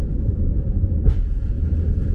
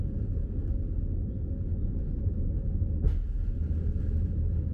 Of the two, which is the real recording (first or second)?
second